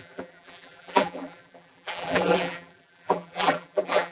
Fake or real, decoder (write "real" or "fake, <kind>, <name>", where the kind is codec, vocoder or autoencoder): fake, vocoder, BigVGAN v2